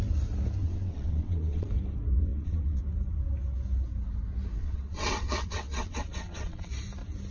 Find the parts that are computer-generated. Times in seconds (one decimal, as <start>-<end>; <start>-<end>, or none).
0.6-1.7; 2.3-2.8; 4.6-6.7